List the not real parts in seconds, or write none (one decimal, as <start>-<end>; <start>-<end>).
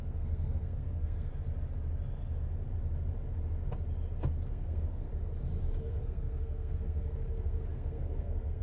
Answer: 0.0-1.3; 4.5-5.1; 5.8-8.6